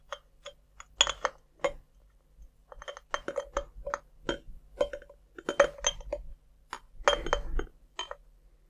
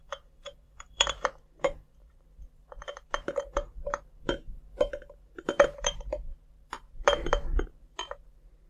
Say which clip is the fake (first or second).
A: second